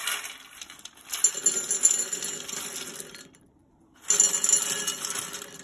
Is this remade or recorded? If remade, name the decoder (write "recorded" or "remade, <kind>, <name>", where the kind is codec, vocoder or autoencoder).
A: recorded